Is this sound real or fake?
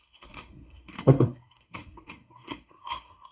fake